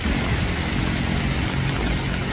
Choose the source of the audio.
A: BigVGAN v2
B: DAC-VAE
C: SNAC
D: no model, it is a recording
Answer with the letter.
D